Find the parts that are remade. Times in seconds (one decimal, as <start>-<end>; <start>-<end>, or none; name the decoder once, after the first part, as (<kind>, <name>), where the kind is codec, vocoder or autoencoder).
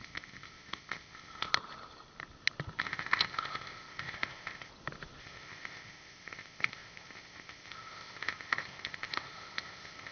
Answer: 0.0-1.5 (codec, ZipCodec); 2.8-4.7; 5.2-10.1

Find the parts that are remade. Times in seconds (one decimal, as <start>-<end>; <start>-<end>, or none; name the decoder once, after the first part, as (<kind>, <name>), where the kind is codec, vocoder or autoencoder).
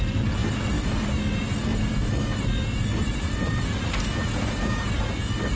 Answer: none